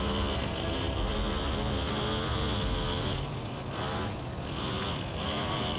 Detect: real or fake real